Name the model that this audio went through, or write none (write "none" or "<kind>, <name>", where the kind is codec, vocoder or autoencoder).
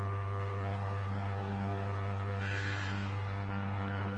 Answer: codec, SNAC